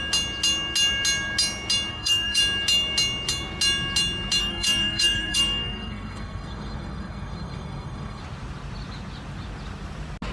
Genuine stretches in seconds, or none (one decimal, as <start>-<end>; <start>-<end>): 0.0-1.9; 2.4-4.4; 8.2-10.3